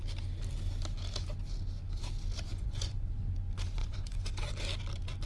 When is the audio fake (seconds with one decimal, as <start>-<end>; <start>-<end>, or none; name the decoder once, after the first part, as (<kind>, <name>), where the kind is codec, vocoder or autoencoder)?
2.5-3.2 (vocoder, Vocos); 3.8-4.5